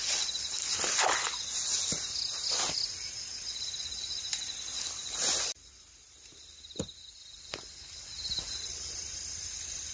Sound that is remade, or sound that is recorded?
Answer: recorded